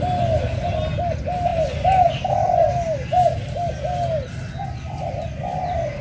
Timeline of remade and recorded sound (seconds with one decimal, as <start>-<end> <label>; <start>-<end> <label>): 0.0-6.0 recorded